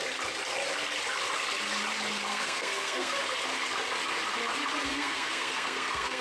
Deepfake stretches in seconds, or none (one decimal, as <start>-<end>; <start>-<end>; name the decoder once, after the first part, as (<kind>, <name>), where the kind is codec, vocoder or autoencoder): 2.3-3.2 (codec, SNAC); 4.9-6.2

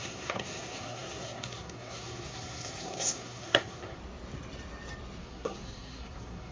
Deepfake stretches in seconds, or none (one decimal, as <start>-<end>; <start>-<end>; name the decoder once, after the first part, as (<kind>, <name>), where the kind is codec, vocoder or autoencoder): 0.0-4.0 (codec, SNAC); 5.2-6.5

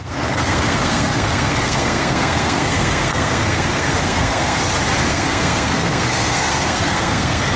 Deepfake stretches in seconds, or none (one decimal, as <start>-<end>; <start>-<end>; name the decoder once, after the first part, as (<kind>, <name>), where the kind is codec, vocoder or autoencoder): 0.0-4.6 (codec, SNAC); 5.1-7.6